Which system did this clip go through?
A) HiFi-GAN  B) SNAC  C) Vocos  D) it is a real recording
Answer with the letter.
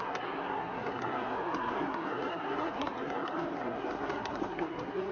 B